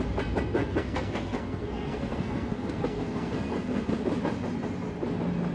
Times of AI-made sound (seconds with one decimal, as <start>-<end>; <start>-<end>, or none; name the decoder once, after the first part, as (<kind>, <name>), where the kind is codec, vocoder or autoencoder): 0.6-3.9 (codec, SNAC)